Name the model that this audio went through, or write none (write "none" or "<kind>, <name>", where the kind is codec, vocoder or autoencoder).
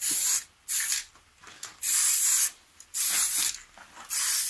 none